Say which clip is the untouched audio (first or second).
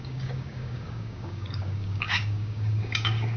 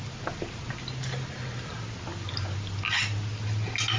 second